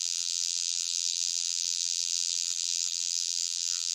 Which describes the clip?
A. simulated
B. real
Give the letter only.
A